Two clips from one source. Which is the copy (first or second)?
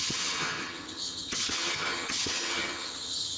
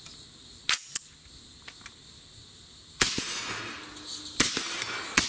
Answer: first